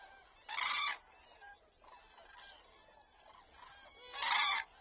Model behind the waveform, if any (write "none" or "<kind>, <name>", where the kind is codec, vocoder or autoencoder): none